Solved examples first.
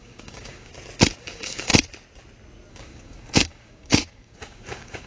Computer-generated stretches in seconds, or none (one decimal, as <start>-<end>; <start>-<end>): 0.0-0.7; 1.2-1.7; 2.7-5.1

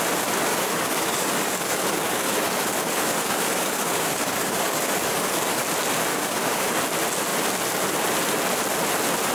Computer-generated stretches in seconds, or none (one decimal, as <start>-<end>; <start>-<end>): 0.5-5.6; 6.1-6.7

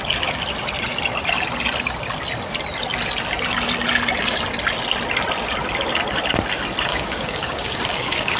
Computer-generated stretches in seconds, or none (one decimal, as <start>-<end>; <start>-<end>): 6.9-8.4

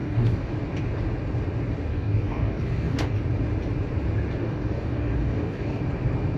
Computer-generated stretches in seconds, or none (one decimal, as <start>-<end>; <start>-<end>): 0.0-0.5; 1.9-3.2; 4.4-5.8

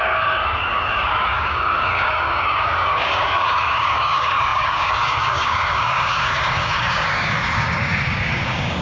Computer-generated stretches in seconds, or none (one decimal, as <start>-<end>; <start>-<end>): 0.0-8.8

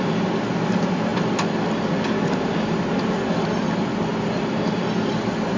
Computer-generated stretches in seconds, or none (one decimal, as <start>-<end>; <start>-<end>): none